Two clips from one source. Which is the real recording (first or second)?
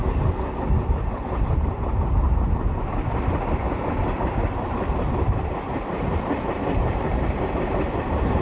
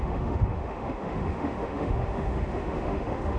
first